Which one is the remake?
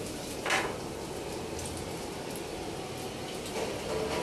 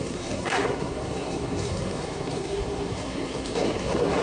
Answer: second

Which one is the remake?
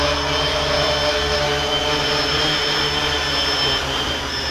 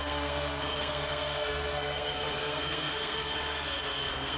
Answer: second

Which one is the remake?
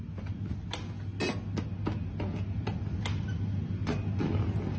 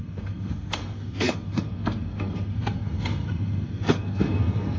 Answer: second